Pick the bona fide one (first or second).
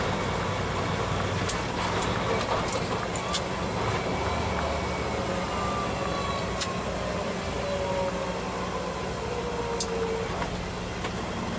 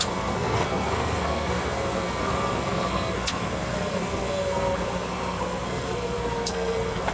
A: first